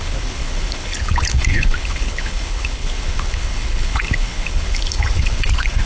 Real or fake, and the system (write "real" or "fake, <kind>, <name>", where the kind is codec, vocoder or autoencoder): fake, codec, HILCodec